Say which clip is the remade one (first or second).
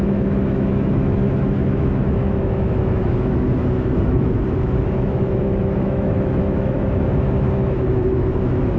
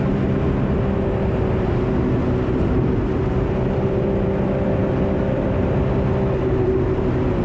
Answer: first